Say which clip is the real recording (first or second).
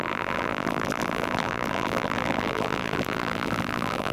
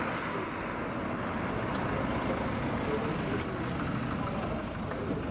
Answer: second